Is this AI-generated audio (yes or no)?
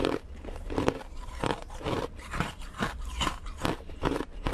yes